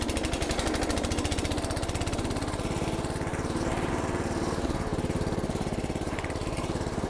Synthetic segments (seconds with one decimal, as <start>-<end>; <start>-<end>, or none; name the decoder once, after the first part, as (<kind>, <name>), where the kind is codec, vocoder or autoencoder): 3.3-3.9 (vocoder, BigVGAN v2); 4.9-7.1